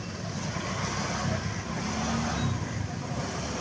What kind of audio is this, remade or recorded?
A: recorded